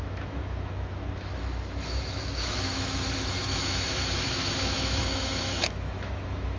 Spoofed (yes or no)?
yes